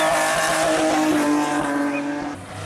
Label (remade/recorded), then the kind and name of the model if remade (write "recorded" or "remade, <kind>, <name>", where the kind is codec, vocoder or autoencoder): recorded